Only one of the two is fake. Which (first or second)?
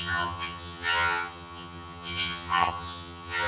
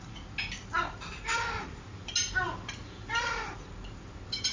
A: first